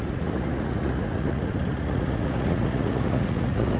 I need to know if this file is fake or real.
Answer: fake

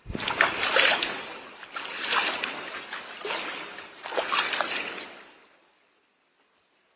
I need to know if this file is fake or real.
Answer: real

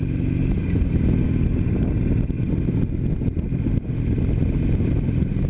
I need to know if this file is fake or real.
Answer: real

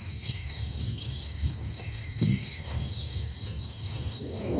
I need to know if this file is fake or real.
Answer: fake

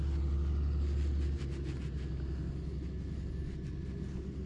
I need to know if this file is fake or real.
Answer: real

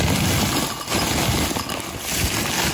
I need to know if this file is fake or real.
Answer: real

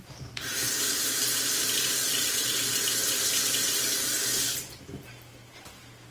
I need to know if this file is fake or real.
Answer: real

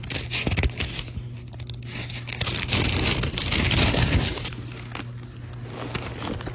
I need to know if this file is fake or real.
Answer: real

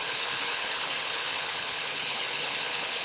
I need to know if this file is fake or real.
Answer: fake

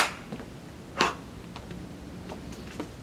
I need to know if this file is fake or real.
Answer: real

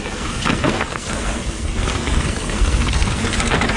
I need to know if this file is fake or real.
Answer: fake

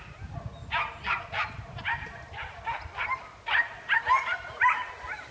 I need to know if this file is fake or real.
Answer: real